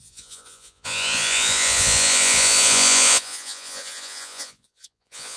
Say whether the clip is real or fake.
fake